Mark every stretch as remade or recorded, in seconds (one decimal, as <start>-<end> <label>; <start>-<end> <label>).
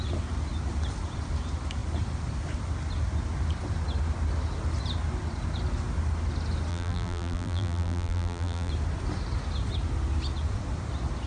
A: 0.0-6.7 recorded; 6.7-8.7 remade; 8.7-11.3 recorded